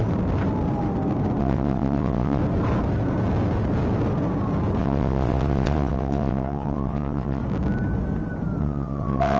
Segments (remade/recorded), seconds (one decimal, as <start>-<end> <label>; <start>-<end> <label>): 0.0-1.4 recorded; 1.4-2.4 remade; 2.4-4.8 recorded; 4.8-7.4 remade; 7.4-8.6 recorded; 8.6-9.4 remade